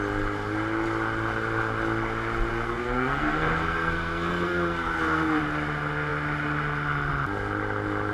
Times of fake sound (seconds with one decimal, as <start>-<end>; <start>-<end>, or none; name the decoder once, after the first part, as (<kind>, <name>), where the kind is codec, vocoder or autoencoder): 2.5-5.4 (codec, SNAC)